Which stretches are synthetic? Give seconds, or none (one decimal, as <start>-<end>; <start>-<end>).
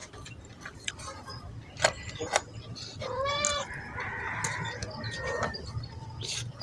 none